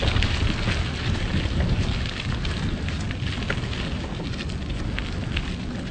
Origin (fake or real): real